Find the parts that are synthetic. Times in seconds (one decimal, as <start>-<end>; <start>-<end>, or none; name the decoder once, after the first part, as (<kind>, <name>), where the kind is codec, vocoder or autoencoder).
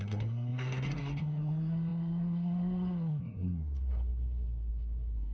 0.0-5.3 (codec, SNAC)